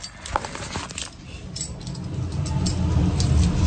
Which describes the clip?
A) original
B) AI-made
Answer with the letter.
A